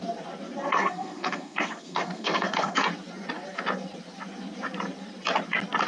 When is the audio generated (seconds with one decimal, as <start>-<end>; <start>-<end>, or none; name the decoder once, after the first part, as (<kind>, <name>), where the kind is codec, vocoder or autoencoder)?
0.7-2.9 (codec, SNAC)